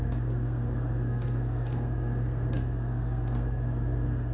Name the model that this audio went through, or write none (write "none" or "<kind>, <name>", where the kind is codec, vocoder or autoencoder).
codec, SNAC